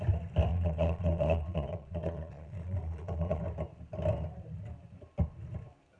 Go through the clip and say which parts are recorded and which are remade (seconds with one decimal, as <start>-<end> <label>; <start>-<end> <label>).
0.0-0.5 recorded; 0.5-3.4 remade; 3.4-6.0 recorded